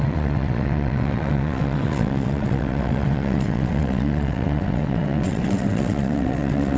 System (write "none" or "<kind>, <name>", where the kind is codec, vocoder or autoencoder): vocoder, WaveNeXt